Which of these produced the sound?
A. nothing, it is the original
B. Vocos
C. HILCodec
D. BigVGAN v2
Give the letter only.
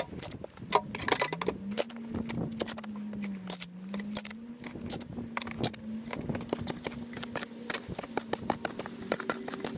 A